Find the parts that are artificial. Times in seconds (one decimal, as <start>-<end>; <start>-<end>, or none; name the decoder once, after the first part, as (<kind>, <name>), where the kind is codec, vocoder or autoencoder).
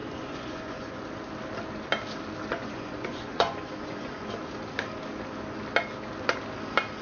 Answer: 0.0-1.0 (vocoder, Vocos); 2.5-4.3